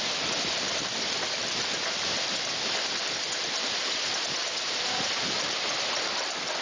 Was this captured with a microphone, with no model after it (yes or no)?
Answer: yes